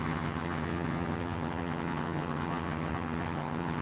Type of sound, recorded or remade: remade